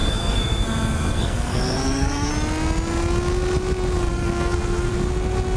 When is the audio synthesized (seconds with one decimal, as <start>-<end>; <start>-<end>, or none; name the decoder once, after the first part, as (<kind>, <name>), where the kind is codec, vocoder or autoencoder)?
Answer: 0.0-2.3 (codec, SNAC); 4.1-4.9